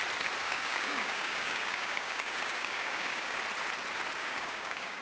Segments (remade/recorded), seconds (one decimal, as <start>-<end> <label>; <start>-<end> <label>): 0.0-0.4 recorded; 0.4-3.4 remade; 3.4-4.2 recorded; 4.2-5.0 remade

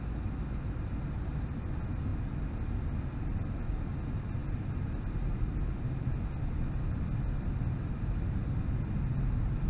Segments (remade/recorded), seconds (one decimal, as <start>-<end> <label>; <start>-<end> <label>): 0.0-9.7 recorded

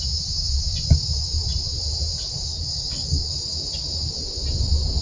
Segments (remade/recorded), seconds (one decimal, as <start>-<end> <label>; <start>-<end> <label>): 0.0-2.5 recorded; 2.5-3.3 remade; 3.3-5.0 recorded